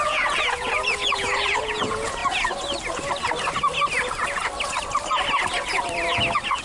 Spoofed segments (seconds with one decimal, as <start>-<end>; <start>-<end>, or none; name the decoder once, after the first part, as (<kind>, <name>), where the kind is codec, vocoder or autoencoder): 0.0-2.2 (vocoder, Vocos)